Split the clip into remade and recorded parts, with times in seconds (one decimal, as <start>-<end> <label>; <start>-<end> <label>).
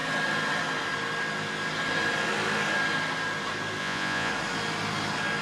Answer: 0.0-3.8 recorded; 3.8-4.3 remade; 4.3-5.4 recorded